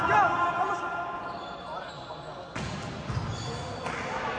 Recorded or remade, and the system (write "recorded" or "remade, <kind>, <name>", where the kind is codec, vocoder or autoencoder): recorded